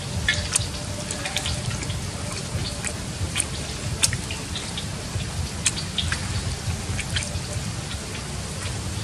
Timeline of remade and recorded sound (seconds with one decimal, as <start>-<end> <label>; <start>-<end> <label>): 0.0-2.6 recorded; 2.6-4.2 remade; 4.2-9.0 recorded